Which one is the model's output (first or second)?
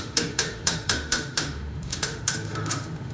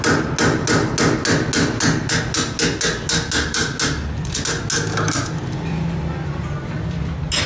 first